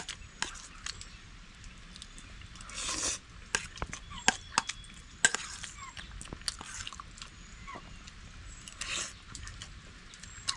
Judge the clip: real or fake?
real